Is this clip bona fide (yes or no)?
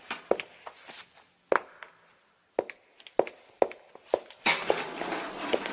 yes